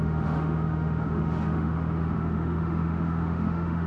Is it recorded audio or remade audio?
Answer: remade